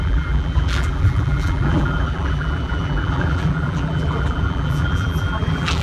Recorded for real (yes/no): no